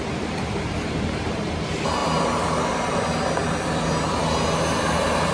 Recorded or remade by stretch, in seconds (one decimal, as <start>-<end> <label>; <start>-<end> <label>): 0.0-5.3 recorded